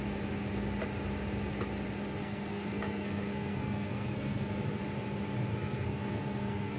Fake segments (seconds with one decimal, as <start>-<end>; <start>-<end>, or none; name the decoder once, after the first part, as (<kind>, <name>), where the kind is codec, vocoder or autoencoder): 2.2-4.5 (codec, SNAC); 5.5-6.8

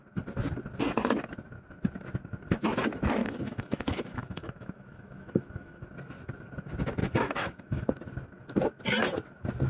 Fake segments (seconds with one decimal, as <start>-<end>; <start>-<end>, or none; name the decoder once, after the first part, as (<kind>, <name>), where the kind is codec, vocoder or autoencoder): 3.2-5.8 (autoencoder, DAC-VAE); 7.0-7.9

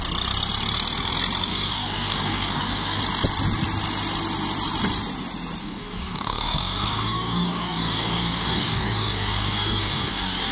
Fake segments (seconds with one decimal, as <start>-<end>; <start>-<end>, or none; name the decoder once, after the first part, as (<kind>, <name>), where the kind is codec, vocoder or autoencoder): 1.5-3.0 (codec, DAC); 5.6-10.5

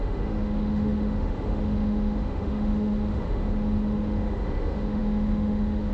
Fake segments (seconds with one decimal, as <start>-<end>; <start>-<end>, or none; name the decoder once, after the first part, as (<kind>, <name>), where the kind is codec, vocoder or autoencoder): 0.0-5.9 (autoencoder, DAC-VAE)

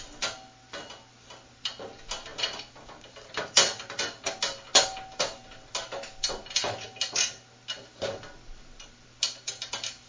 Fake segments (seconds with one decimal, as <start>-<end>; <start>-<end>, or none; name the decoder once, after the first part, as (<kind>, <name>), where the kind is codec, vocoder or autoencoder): none